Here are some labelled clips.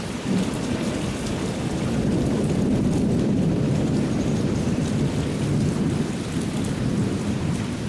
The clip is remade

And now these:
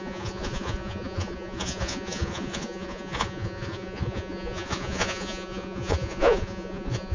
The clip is remade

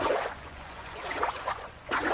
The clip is remade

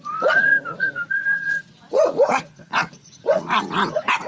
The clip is remade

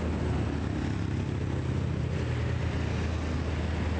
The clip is recorded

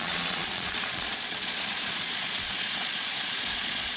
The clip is remade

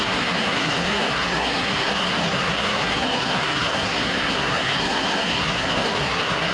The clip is remade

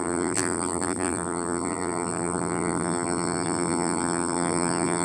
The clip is remade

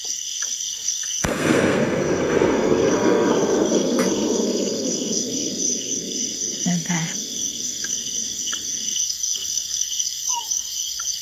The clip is remade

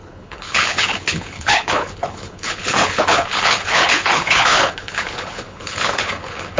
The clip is remade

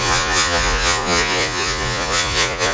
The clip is remade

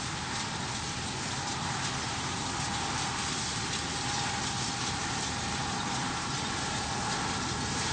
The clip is recorded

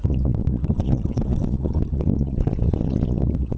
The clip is remade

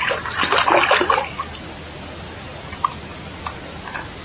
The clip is recorded